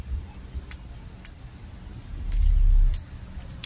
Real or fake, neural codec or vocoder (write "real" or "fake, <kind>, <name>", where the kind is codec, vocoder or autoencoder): real